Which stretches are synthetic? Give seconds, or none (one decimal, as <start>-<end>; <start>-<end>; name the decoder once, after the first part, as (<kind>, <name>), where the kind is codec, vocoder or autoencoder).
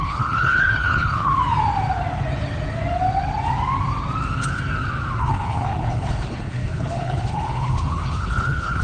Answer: 0.0-1.3 (codec, HILCodec); 5.2-8.8